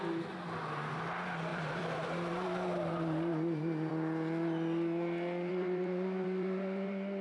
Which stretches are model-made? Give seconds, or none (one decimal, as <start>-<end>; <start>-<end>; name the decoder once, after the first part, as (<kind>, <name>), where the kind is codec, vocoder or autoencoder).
1.5-3.9 (vocoder, BigVGAN v2); 5.5-7.2